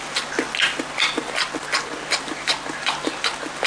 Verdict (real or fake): real